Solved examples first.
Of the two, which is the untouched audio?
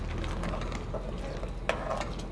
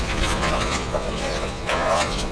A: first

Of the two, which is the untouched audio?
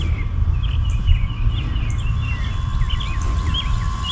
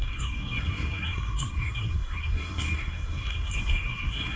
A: first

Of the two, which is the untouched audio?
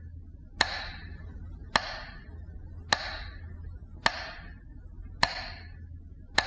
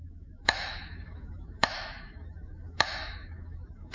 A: first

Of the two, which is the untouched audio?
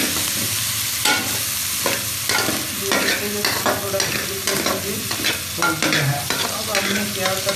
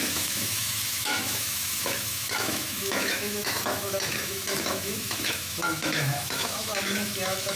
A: first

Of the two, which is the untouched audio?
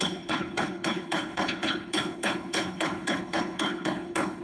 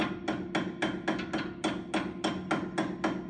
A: second